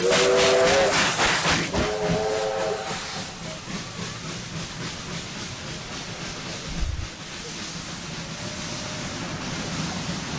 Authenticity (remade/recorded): recorded